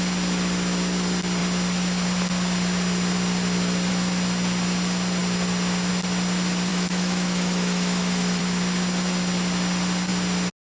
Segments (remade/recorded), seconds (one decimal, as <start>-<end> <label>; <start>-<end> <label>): 0.0-6.7 recorded; 6.7-8.4 remade; 8.4-10.7 recorded